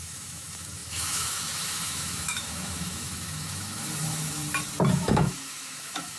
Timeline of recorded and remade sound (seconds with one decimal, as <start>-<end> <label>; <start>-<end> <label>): 0.0-4.4 remade; 4.4-4.9 recorded; 4.9-6.2 remade